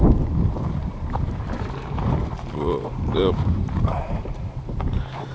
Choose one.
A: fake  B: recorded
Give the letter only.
A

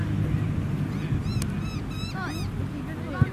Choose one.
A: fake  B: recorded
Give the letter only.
B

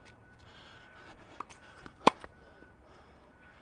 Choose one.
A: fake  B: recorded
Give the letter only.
A